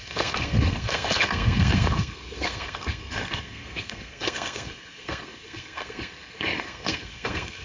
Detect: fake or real fake